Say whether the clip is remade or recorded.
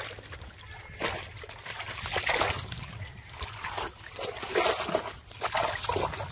recorded